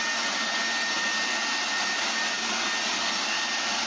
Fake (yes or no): no